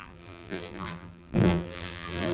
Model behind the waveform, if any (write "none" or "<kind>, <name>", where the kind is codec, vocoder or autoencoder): vocoder, BigVGAN v2